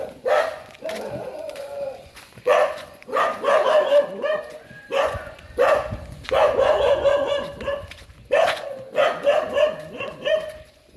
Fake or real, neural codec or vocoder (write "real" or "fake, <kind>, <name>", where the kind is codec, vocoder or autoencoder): fake, vocoder, Vocos